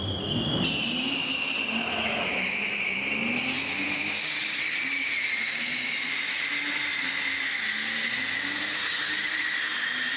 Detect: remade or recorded recorded